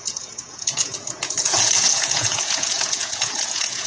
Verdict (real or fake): fake